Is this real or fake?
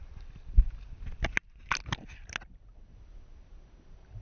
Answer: real